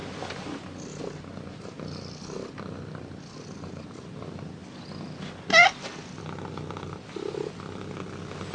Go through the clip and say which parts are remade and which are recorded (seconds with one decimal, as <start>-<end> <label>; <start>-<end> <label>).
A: 0.0-8.5 recorded